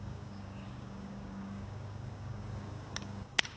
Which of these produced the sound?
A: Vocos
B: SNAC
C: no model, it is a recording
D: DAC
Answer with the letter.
D